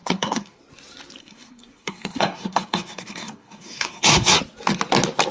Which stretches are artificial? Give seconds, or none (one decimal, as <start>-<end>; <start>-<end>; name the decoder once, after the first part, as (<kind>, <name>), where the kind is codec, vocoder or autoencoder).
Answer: 0.0-0.6 (codec, SNAC); 1.2-4.4